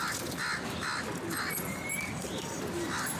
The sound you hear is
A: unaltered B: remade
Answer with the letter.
A